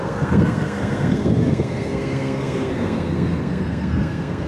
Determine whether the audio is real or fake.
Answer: fake